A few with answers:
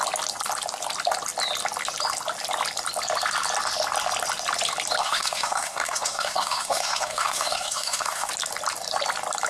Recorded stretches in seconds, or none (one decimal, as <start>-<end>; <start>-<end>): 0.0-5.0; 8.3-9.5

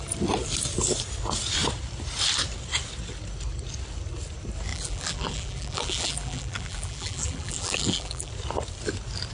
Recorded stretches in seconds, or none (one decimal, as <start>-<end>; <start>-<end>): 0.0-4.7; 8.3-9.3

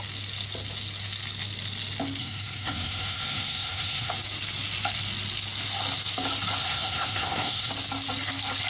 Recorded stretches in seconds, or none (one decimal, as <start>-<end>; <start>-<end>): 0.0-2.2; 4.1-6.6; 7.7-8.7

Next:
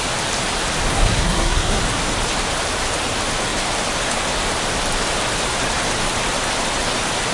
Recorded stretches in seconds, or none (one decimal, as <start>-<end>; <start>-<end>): 0.0-0.9; 1.8-7.3